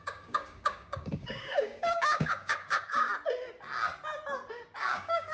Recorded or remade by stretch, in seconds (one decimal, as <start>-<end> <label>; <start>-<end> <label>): 0.0-3.1 remade; 3.1-4.8 recorded; 4.8-5.3 remade